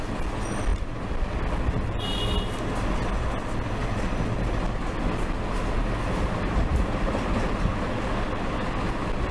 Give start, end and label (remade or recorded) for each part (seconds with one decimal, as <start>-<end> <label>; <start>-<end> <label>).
0.0-0.7 recorded; 0.7-2.0 remade; 2.0-6.7 recorded; 6.7-7.5 remade; 7.5-9.3 recorded